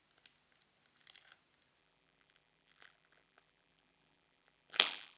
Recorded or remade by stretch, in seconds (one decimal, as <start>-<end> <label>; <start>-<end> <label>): 0.0-1.8 recorded; 1.8-5.2 remade